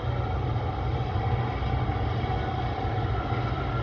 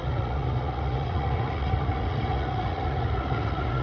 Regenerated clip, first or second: second